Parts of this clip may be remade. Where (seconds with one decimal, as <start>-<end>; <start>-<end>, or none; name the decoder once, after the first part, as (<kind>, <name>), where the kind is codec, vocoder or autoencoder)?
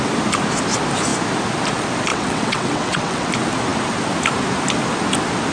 2.1-3.3 (vocoder, WaveNeXt)